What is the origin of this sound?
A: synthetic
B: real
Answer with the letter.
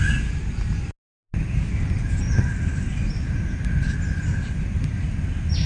B